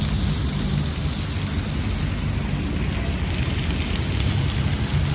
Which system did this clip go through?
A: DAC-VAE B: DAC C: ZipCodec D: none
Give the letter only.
D